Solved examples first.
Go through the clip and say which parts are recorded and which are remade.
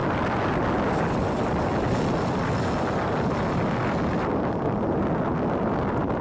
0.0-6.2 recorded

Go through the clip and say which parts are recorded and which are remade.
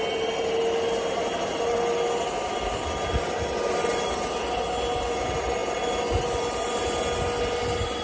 0.0-8.0 recorded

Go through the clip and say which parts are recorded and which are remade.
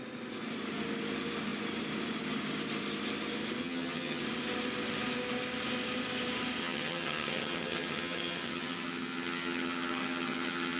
0.0-3.6 recorded; 3.6-4.2 remade; 4.2-6.6 recorded; 6.6-10.8 remade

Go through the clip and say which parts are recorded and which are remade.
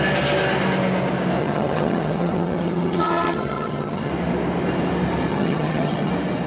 0.0-1.4 recorded; 1.4-4.1 remade; 4.1-5.3 recorded; 5.3-6.1 remade; 6.1-6.5 recorded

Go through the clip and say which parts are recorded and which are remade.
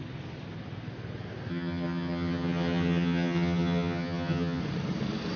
0.0-1.5 recorded; 1.5-4.6 remade; 4.6-5.4 recorded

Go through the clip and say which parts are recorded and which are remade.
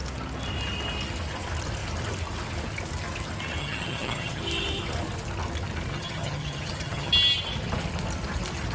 0.0-3.6 recorded; 3.6-4.4 remade; 4.4-5.9 recorded; 5.9-7.1 remade; 7.1-8.7 recorded